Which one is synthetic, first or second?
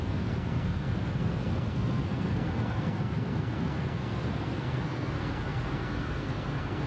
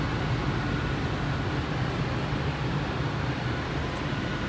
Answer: first